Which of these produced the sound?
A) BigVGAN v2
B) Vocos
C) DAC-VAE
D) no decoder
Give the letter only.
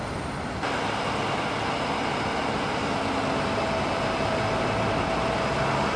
D